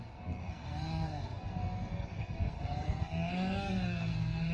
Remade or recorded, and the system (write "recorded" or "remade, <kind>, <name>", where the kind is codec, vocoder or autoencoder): remade, codec, SNAC